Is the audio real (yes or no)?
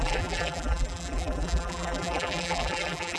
no